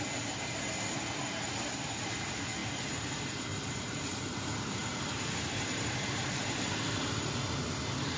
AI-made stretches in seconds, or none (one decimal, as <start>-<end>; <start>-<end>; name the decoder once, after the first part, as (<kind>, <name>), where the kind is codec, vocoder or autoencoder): 3.5-7.1 (vocoder, BigVGAN v2)